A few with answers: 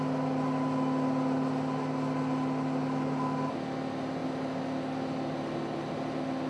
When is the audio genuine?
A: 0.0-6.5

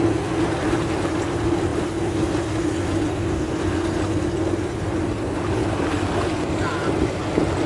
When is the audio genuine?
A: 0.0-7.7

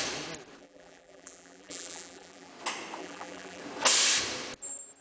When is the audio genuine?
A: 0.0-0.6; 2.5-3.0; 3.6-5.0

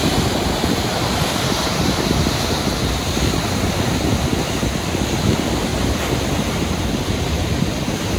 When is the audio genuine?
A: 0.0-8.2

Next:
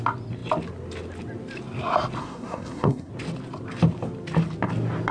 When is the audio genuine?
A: 0.0-2.2; 3.1-5.1

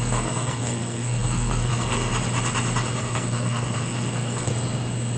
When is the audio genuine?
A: 2.1-3.0; 4.5-5.2